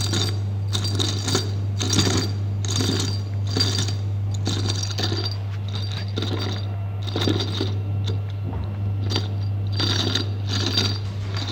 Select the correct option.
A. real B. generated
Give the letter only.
A